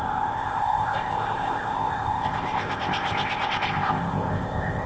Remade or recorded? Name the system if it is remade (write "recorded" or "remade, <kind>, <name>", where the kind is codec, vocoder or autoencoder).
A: remade, codec, ZipCodec